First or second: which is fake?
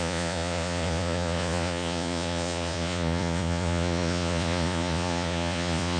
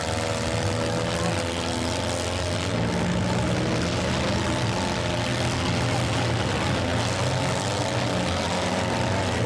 first